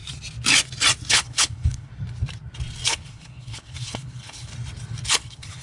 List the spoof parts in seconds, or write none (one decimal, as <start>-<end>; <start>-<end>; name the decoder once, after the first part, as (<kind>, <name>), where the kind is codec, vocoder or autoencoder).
1.1-1.9 (codec, HILCodec); 2.9-4.5; 5.1-5.6